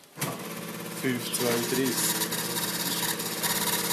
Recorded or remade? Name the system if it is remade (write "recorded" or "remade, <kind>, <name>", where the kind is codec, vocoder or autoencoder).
recorded